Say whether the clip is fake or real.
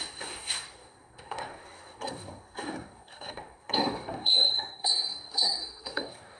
fake